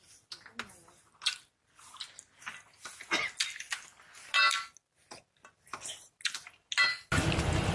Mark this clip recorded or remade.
recorded